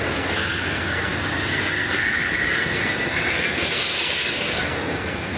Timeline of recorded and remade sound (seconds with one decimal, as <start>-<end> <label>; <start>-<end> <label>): 0.0-5.4 remade

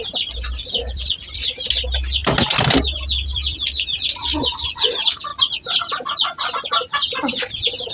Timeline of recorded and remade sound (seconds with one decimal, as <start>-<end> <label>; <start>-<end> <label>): 0.0-7.9 recorded

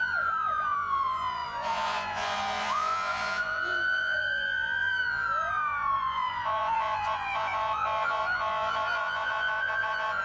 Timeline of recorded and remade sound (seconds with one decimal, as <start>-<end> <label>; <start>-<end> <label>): 0.0-10.2 remade

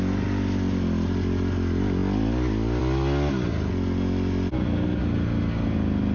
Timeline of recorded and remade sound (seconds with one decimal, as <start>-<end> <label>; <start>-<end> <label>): 0.0-6.1 recorded

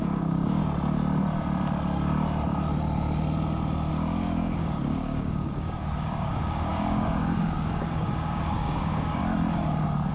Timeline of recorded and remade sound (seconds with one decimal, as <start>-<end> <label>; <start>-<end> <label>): 0.0-0.6 remade; 0.6-3.9 recorded; 3.9-9.2 remade; 9.2-10.1 recorded

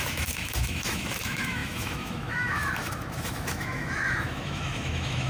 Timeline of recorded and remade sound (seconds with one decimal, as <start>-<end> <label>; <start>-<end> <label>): 0.0-5.3 remade

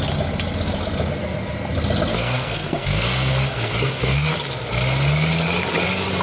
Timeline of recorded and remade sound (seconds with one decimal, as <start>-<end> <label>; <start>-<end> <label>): 0.0-2.1 recorded; 2.1-4.3 remade; 4.3-6.2 recorded